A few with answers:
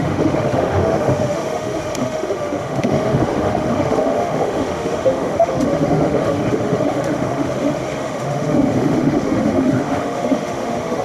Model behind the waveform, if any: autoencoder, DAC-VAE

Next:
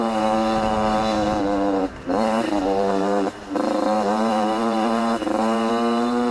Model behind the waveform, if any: vocoder, BigVGAN v2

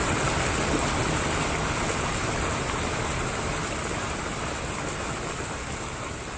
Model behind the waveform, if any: none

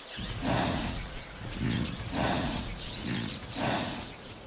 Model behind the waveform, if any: vocoder, Vocos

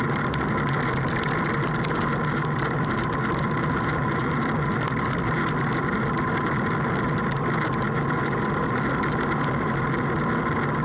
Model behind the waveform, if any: none